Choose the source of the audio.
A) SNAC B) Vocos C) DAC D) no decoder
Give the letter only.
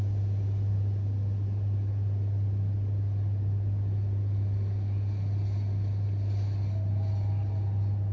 D